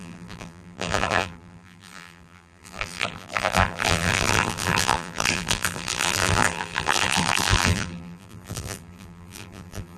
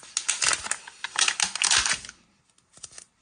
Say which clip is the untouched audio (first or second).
second